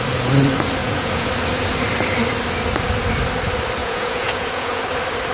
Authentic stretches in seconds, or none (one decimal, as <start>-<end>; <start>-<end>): 0.0-0.8; 1.3-3.8; 4.8-5.3